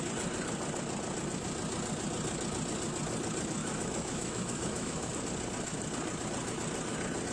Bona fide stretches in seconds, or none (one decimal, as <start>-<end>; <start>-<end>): 0.0-3.6; 5.1-7.3